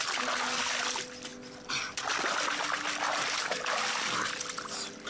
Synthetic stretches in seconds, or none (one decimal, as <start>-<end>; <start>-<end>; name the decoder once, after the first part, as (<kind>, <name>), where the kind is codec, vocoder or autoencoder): none